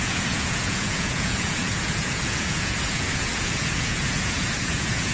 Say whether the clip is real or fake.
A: fake